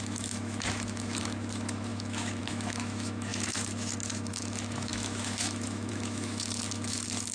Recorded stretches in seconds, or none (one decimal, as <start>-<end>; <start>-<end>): none